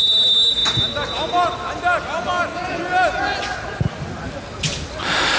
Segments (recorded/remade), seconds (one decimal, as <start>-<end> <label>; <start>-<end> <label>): 0.0-5.4 recorded